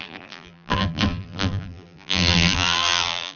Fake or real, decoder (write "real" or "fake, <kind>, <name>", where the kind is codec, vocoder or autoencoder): fake, vocoder, BigVGAN v2